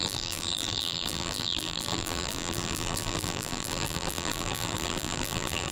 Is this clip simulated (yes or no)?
yes